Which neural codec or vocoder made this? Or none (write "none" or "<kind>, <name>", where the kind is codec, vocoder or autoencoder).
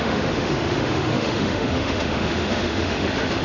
autoencoder, DAC-VAE